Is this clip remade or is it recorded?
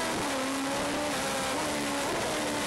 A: recorded